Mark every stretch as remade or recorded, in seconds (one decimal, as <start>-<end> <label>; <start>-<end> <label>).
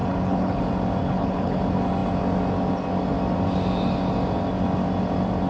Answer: 0.0-0.6 remade; 0.6-1.0 recorded; 1.0-1.6 remade; 1.6-5.5 recorded